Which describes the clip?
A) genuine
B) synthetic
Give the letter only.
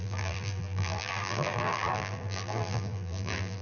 B